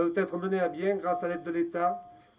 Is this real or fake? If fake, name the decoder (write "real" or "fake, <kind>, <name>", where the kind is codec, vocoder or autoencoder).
real